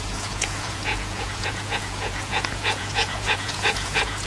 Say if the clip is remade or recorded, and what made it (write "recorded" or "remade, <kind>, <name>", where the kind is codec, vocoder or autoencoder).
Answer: remade, vocoder, Vocos